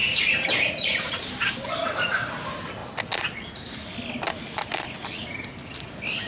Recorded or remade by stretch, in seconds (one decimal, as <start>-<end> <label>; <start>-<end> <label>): 0.0-2.8 remade; 2.8-6.3 recorded